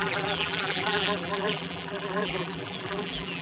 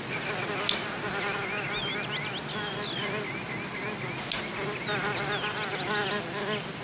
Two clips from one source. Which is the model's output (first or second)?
first